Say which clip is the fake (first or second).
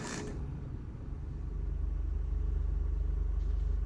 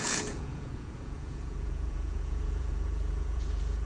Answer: second